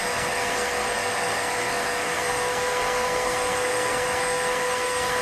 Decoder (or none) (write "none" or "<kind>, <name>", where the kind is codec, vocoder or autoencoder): codec, SNAC